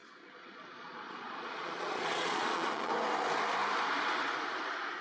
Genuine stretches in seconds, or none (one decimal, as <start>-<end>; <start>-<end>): 2.9-5.0